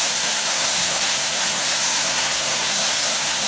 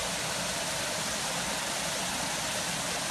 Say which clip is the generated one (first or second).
first